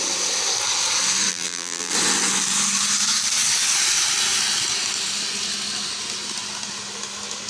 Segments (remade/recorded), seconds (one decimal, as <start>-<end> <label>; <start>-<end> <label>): 0.0-1.3 recorded; 1.3-1.9 remade; 1.9-7.5 recorded